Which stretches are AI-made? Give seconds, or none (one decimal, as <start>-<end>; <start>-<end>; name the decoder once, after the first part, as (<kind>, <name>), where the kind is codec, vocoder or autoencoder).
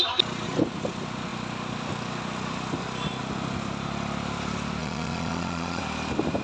4.8-5.8 (vocoder, Vocos)